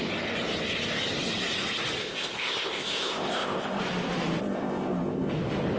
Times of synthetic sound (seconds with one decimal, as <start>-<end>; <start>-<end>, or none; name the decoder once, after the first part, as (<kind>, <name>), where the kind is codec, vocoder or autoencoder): 2.0-3.8 (codec, ZipCodec); 4.4-5.3